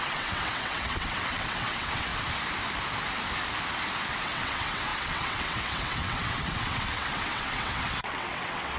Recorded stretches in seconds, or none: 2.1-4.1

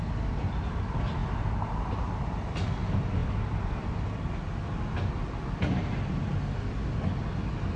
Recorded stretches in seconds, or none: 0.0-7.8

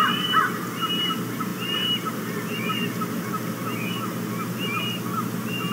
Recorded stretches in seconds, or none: 0.0-5.7